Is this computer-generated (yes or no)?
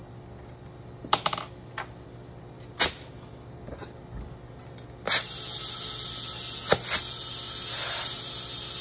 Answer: no